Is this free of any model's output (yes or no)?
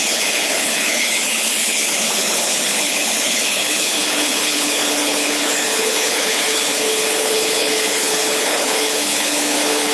no